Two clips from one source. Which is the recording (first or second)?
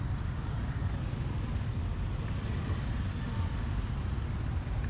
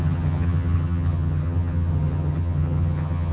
first